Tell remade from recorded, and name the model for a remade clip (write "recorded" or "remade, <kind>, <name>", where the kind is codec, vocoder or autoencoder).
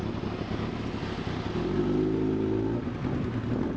recorded